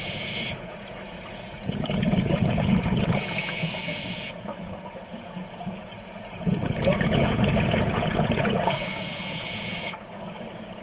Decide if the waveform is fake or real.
fake